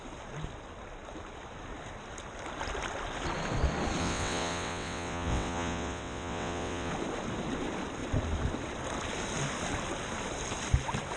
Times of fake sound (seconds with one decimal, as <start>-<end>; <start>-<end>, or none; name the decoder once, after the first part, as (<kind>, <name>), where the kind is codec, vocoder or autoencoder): 4.0-6.9 (vocoder, WaveNeXt)